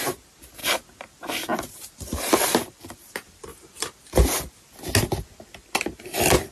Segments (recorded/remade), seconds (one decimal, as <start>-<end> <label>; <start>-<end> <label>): 0.0-0.6 recorded; 0.6-4.5 remade; 4.5-6.5 recorded